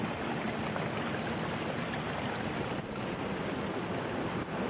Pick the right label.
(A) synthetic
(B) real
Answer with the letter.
B